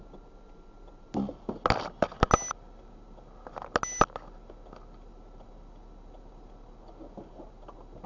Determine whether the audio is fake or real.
real